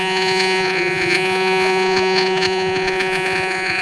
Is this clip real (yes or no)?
no